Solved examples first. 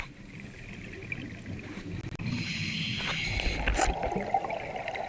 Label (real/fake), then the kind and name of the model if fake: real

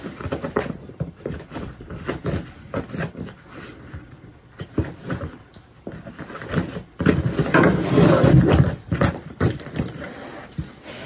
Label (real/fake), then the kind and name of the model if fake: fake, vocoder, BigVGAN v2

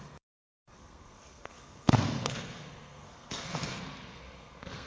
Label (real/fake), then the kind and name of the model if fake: fake, codec, SNAC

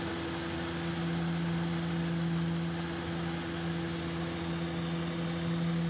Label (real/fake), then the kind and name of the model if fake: real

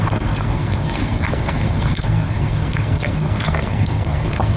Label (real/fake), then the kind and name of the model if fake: fake, codec, SNAC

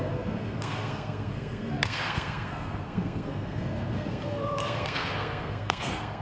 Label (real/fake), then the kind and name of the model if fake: fake, codec, SNAC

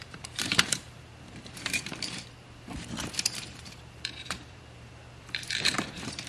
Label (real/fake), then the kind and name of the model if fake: fake, vocoder, BigVGAN v2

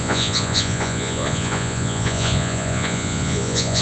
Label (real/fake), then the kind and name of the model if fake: fake, vocoder, Vocos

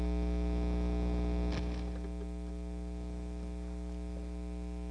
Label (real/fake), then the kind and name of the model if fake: real